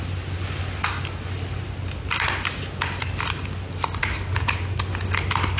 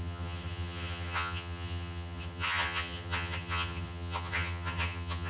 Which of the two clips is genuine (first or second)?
first